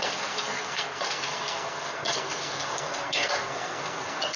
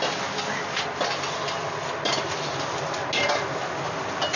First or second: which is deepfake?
first